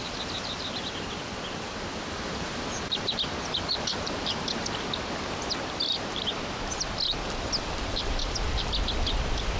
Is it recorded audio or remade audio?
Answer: remade